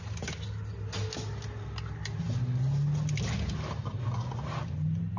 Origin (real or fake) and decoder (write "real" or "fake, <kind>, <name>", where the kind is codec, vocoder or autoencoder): real